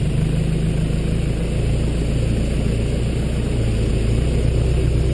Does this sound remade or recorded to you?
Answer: recorded